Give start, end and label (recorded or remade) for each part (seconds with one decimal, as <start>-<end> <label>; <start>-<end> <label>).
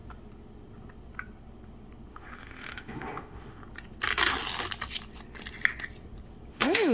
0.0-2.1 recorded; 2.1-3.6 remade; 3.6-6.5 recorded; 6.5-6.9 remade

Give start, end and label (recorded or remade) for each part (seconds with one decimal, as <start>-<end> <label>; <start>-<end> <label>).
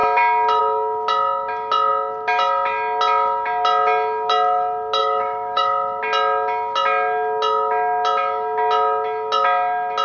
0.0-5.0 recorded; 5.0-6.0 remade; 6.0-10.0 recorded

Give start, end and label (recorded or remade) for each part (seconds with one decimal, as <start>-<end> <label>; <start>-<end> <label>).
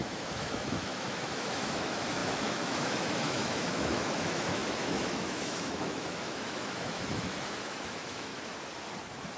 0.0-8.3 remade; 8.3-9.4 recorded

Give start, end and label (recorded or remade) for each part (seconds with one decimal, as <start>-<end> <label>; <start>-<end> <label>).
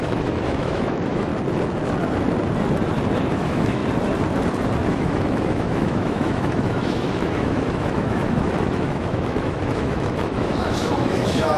0.0-1.3 remade; 1.3-3.3 recorded; 3.3-3.8 remade; 3.8-4.9 recorded; 4.9-11.6 remade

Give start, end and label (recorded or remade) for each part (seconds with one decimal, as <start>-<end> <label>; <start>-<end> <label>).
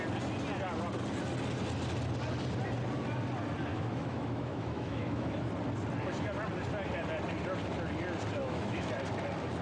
0.0-3.7 recorded; 3.7-5.5 remade; 5.5-8.4 recorded; 8.4-8.9 remade; 8.9-9.6 recorded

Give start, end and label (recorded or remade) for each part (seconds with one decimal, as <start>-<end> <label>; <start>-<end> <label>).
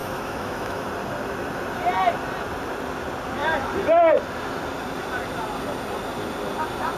0.0-0.9 remade; 0.9-7.0 recorded